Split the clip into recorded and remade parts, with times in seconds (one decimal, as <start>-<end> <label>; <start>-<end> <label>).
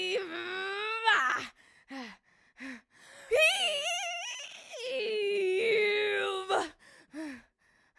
0.0-6.5 recorded; 6.5-7.0 remade; 7.0-8.0 recorded